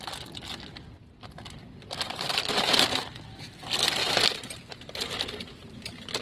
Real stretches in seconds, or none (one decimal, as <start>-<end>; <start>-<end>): 0.0-1.6; 3.0-4.0; 5.7-6.2